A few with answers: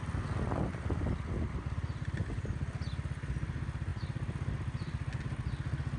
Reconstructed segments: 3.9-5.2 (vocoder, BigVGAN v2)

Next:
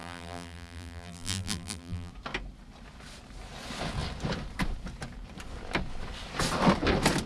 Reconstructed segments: 0.0-2.1 (vocoder, BigVGAN v2)

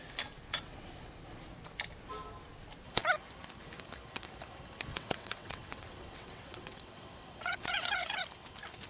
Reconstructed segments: 0.5-1.1 (vocoder, WaveNeXt); 4.9-8.2

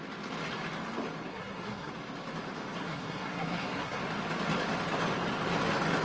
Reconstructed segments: 1.3-1.9 (codec, SNAC); 2.8-4.0

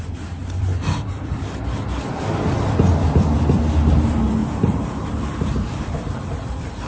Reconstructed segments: 0.4-2.4 (vocoder, BigVGAN v2); 4.4-6.9

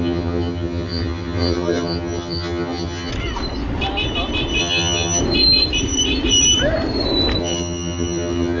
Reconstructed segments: 0.0-3.1 (vocoder, HiFi-GAN); 4.6-5.2; 7.4-8.6

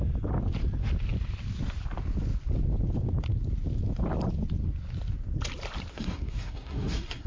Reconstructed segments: 5.9-7.3 (codec, SNAC)

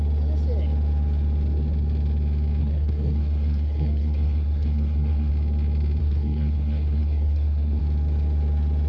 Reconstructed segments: 2.6-5.3 (codec, SNAC); 6.0-7.8